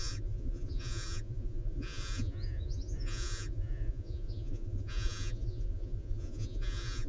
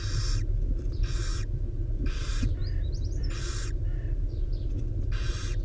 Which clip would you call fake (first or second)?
first